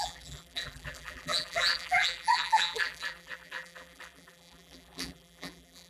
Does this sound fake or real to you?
fake